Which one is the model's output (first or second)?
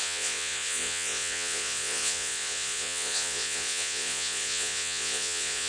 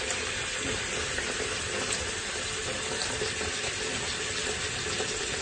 first